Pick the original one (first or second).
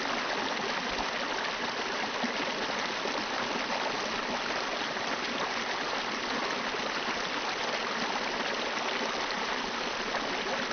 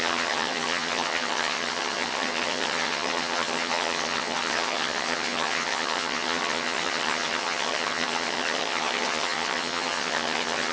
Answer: first